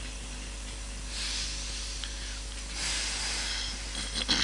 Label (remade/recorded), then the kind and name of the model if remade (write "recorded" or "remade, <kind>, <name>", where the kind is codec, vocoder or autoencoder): recorded